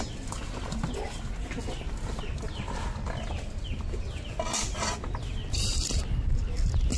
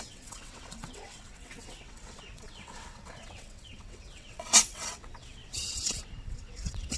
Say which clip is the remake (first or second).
second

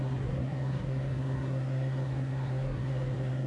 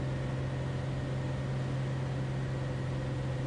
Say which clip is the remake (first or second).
first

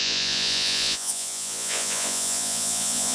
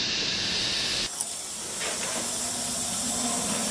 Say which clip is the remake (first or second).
first